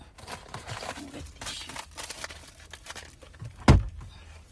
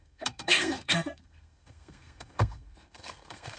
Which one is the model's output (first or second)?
second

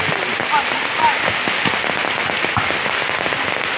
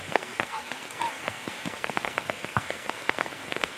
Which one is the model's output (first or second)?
second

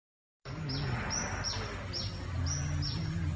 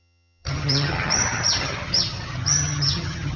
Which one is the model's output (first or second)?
second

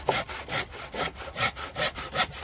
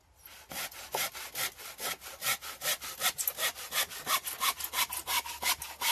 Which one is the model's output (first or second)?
first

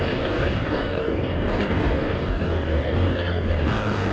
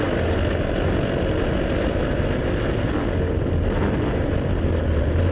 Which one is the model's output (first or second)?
first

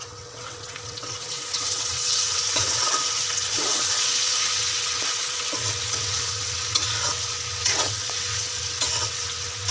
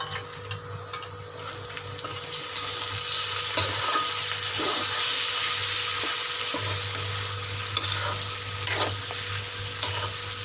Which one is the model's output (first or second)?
first